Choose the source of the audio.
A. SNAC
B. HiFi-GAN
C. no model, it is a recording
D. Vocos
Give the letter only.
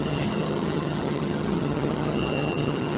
B